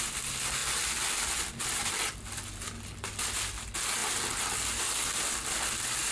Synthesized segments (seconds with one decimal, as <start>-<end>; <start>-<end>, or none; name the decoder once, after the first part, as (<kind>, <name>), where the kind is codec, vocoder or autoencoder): none